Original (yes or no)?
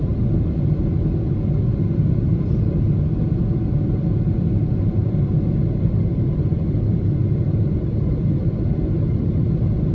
yes